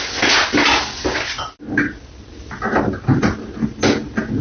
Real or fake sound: real